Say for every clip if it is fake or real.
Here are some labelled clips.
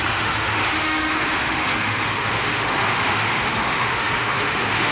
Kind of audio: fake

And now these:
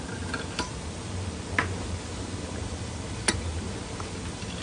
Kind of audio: real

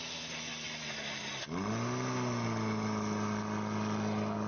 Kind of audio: real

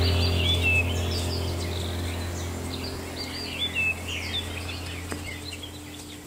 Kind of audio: real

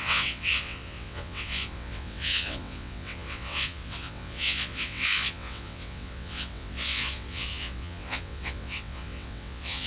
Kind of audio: fake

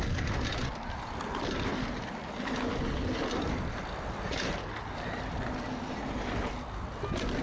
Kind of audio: real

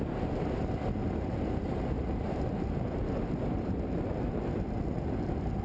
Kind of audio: real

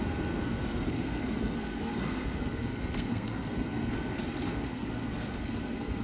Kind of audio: fake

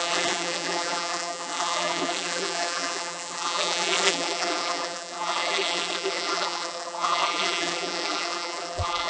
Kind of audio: fake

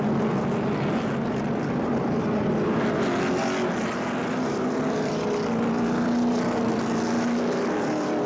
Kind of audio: real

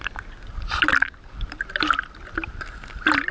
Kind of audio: real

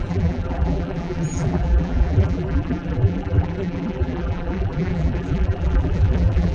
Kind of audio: fake